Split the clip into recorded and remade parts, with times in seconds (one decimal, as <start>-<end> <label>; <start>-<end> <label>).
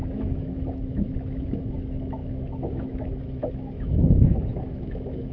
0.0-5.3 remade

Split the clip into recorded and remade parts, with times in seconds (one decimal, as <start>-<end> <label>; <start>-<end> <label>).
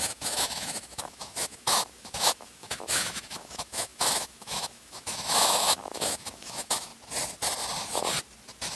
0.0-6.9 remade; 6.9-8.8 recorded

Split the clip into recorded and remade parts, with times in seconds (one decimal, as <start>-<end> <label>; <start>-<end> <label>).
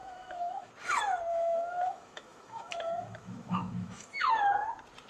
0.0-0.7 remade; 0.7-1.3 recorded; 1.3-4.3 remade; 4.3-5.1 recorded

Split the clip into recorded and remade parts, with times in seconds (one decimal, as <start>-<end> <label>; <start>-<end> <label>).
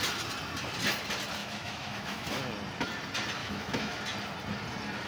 0.0-1.4 recorded; 1.4-2.4 remade; 2.4-3.4 recorded; 3.4-4.0 remade; 4.0-5.1 recorded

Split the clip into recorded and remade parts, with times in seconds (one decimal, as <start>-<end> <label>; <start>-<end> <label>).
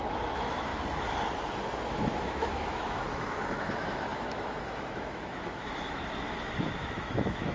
0.0-0.7 remade; 0.7-1.9 recorded; 1.9-7.5 remade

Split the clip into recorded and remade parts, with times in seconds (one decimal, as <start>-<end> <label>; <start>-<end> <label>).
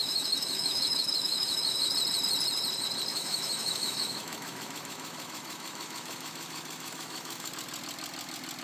0.0-1.9 remade; 1.9-3.1 recorded; 3.1-7.5 remade; 7.5-8.6 recorded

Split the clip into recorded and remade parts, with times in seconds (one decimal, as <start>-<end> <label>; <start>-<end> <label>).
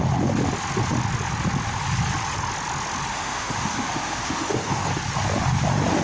0.0-3.1 recorded; 3.1-4.9 remade; 4.9-6.0 recorded